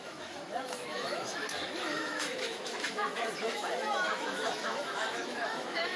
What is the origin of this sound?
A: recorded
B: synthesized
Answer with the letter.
B